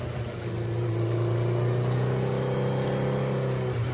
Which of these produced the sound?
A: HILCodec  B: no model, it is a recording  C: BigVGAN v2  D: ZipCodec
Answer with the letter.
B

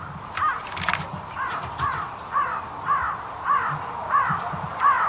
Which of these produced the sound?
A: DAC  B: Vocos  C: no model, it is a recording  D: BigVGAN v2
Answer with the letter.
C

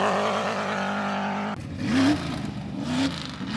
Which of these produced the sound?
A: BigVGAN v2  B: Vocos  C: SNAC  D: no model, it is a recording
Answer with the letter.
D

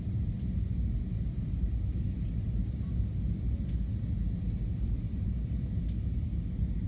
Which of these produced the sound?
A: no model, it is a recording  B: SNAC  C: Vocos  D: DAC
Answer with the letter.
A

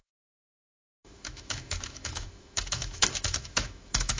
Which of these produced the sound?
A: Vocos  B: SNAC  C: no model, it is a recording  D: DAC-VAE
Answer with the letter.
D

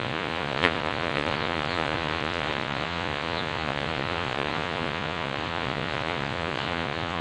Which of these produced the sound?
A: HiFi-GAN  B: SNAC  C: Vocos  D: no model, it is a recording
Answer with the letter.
C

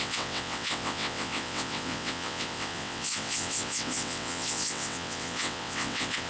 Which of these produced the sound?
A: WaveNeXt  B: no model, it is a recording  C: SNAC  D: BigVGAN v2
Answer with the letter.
A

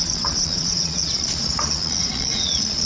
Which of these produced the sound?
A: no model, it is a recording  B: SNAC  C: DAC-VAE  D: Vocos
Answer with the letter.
D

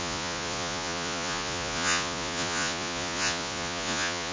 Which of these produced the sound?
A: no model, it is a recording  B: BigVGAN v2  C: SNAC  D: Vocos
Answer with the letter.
D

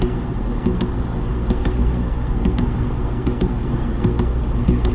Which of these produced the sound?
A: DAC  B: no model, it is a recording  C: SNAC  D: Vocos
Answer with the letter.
C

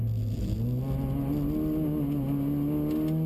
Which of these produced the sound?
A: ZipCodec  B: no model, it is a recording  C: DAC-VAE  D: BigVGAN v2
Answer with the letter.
B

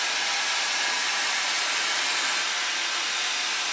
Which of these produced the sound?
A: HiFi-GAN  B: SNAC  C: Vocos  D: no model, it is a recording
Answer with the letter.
D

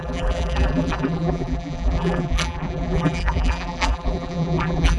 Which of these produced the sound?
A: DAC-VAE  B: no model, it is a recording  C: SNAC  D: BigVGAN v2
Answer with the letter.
D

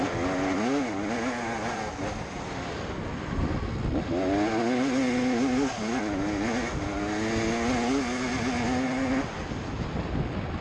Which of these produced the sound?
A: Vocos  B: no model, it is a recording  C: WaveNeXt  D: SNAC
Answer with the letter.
B